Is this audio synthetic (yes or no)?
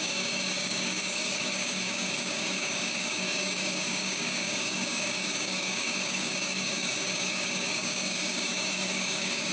yes